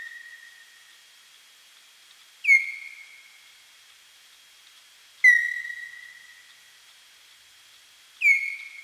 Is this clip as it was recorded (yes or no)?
yes